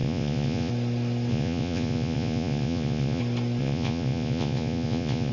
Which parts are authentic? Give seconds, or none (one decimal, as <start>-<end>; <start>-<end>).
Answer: 0.7-1.3; 3.2-3.6